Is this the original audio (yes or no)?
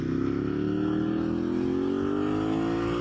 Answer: yes